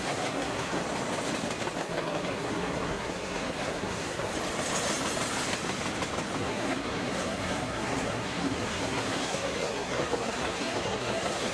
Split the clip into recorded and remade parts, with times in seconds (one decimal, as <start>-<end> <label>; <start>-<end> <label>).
0.0-0.8 remade; 0.8-1.8 recorded; 1.8-4.3 remade; 4.3-6.4 recorded; 6.4-11.5 remade